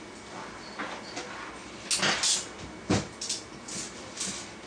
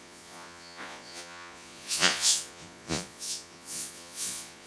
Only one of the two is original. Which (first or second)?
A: first